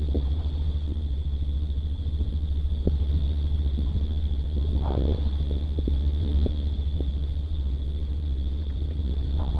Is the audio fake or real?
fake